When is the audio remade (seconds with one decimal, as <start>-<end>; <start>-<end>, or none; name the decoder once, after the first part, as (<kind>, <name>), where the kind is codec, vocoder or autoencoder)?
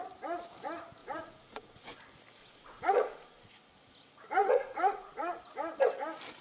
1.0-2.0 (vocoder, Vocos); 2.4-3.5; 4.4-5.4